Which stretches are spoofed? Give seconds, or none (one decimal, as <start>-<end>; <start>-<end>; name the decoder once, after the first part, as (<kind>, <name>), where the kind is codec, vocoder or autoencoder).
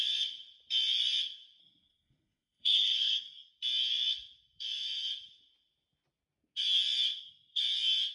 1.6-3.5 (codec, SNAC); 7.1-7.6